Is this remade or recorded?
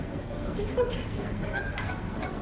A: remade